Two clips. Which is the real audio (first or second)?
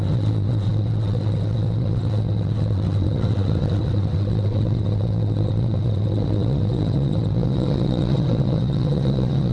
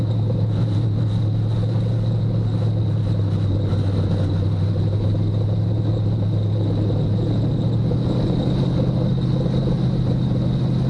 second